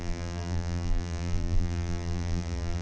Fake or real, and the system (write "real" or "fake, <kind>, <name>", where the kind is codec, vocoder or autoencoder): fake, vocoder, BigVGAN v2